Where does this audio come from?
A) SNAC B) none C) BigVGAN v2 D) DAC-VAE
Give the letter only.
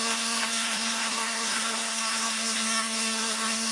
A